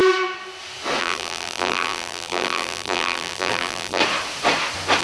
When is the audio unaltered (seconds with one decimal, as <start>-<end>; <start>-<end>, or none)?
0.0-1.0; 4.0-5.0